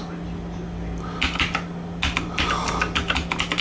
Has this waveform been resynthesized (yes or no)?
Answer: no